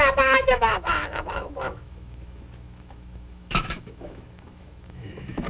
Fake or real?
fake